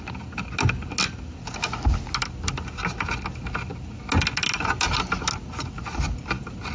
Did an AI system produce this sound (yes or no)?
no